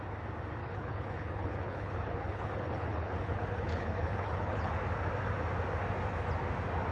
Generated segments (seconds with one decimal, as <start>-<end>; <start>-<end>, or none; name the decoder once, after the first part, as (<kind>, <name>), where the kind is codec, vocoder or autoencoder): 0.6-4.7 (codec, HILCodec)